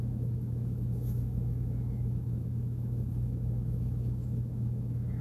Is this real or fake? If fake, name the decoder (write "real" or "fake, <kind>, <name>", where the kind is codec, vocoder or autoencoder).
fake, autoencoder, DAC-VAE